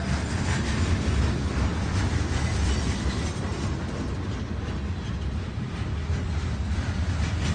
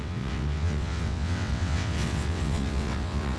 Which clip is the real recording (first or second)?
first